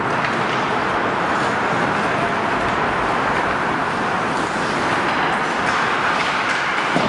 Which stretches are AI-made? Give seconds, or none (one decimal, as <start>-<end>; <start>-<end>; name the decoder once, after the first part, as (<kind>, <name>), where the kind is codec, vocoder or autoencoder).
none